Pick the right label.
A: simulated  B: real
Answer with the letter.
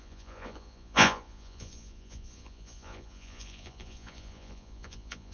A